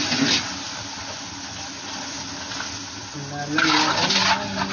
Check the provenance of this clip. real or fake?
real